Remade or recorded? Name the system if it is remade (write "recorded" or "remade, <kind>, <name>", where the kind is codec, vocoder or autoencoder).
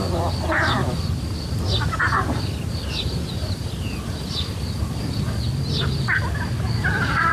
recorded